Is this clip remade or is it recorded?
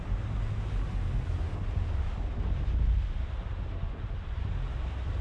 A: recorded